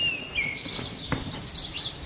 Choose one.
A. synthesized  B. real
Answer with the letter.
B